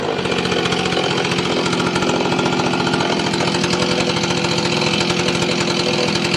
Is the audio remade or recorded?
recorded